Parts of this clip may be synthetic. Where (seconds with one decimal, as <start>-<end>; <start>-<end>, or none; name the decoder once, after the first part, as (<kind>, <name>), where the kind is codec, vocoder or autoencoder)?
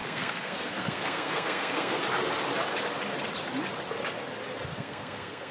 0.0-2.0 (codec, SNAC); 4.7-5.5